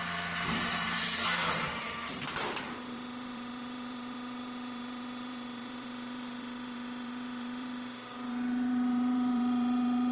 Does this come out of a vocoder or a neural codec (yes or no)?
yes